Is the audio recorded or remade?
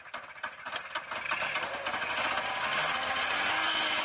recorded